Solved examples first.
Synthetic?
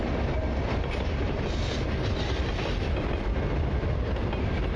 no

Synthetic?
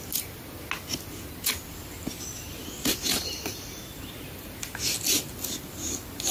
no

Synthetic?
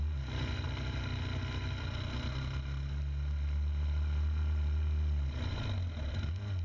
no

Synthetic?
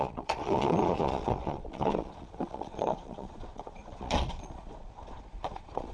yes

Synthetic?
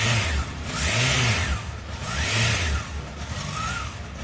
no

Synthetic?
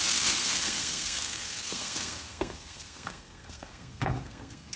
yes